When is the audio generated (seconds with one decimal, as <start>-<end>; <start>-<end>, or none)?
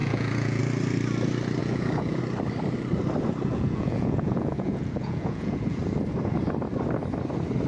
0.0-0.6; 1.6-2.2; 3.5-5.8